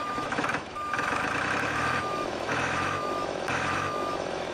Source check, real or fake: fake